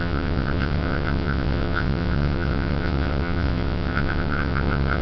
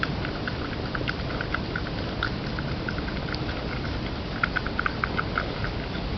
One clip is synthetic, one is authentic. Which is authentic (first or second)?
second